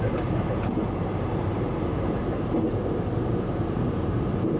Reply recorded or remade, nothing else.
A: remade